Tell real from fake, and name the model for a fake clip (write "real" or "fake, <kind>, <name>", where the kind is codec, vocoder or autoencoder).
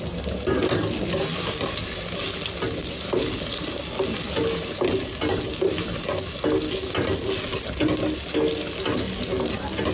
real